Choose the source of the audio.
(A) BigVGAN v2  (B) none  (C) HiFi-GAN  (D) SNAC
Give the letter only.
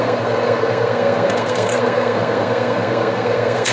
D